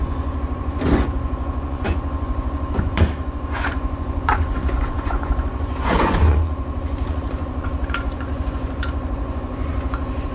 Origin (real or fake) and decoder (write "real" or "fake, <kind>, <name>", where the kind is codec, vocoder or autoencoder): fake, vocoder, Vocos